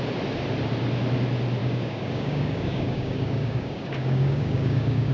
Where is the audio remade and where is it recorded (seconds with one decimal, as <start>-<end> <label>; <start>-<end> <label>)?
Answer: 0.0-1.6 recorded; 1.6-5.1 remade